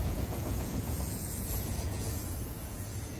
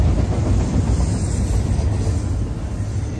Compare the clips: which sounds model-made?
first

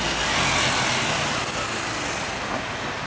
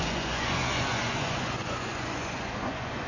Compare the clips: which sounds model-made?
second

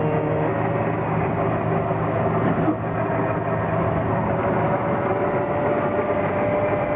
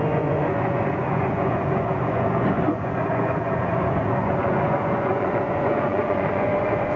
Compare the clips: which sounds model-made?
second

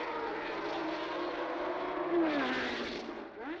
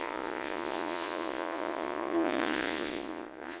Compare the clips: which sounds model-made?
second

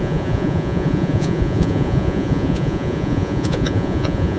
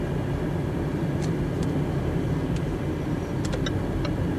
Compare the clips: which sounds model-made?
first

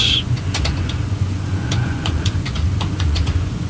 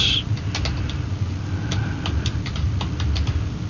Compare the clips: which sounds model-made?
first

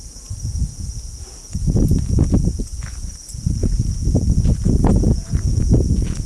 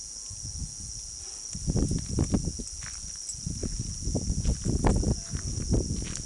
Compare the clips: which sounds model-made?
first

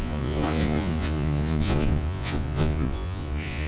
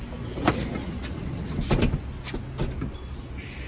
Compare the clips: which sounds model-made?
first